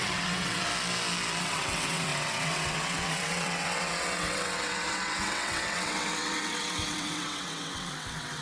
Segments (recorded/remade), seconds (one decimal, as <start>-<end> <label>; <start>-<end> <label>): 0.0-0.7 remade; 0.7-1.4 recorded; 1.4-8.4 remade

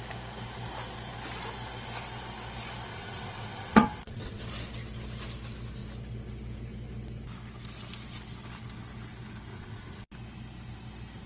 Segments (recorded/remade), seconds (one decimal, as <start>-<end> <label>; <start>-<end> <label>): 0.0-2.9 recorded; 2.9-4.4 remade; 4.4-9.5 recorded; 9.5-10.0 remade; 10.0-11.3 recorded

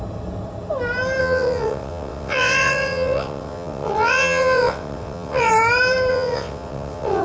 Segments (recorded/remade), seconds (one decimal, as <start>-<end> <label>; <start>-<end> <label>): 0.0-1.2 recorded; 1.2-5.5 remade; 5.5-6.1 recorded; 6.1-7.2 remade

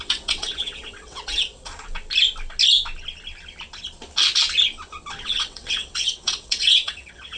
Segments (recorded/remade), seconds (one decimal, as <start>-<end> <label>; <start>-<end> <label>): 0.0-1.7 remade; 1.7-5.2 recorded; 5.2-7.4 remade

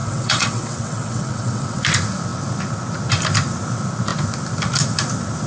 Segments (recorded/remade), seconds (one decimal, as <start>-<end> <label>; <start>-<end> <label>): 0.0-1.8 remade; 1.8-5.5 recorded

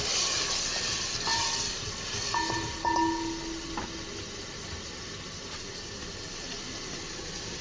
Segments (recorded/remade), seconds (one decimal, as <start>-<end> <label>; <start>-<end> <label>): 0.0-7.6 recorded

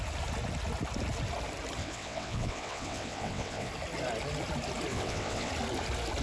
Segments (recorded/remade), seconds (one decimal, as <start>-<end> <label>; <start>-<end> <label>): 0.0-1.8 recorded; 1.8-3.7 remade; 3.7-4.9 recorded; 4.9-5.5 remade; 5.5-6.2 recorded